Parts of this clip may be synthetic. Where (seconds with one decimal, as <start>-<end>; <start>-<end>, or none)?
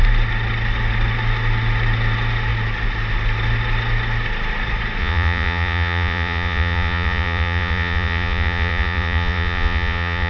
5.0-10.3